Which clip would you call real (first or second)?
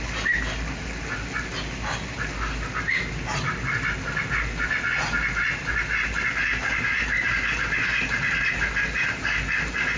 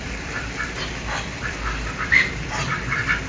first